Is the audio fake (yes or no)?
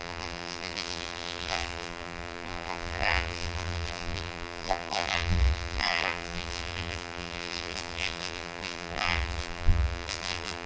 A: yes